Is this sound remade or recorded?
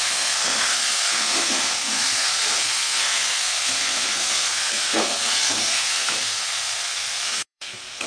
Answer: remade